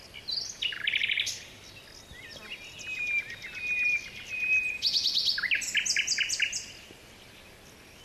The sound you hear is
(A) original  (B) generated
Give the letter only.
A